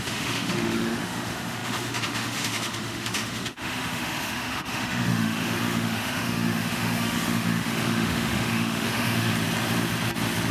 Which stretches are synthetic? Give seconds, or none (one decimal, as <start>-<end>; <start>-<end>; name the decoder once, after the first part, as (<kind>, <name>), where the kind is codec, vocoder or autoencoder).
0.0-9.3 (autoencoder, DAC-VAE)